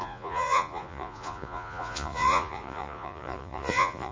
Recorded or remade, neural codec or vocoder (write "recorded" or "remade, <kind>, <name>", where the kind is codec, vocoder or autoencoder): remade, vocoder, Vocos